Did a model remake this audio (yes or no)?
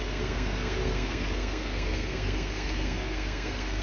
yes